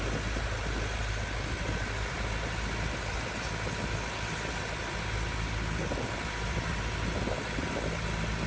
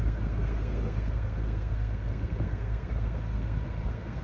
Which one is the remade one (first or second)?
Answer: second